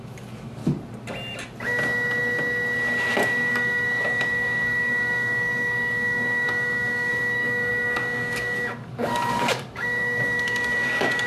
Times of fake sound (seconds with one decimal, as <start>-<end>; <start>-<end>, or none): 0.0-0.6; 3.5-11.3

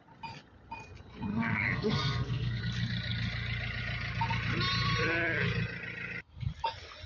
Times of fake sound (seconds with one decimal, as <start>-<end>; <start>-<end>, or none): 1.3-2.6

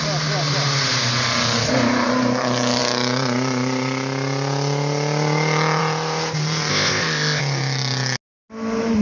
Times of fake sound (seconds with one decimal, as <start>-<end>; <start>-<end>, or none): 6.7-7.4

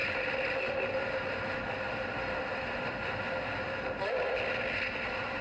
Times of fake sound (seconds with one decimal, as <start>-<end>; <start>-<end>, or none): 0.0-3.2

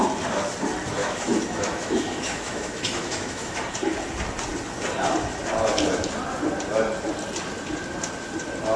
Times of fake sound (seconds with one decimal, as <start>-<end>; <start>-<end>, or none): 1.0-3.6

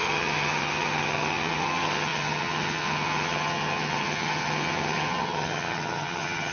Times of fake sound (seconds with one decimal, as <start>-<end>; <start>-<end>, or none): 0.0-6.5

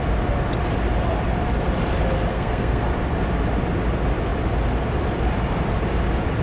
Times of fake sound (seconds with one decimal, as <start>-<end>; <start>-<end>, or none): 2.3-2.8